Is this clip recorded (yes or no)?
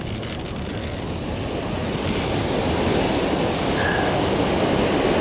yes